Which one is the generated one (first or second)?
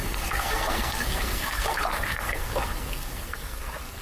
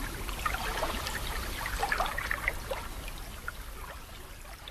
first